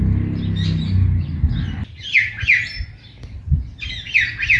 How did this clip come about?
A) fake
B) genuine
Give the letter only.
B